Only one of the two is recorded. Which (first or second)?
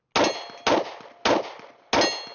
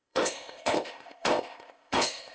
first